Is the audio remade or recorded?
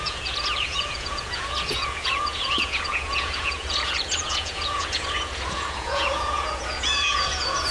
remade